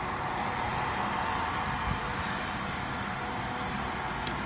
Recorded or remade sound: recorded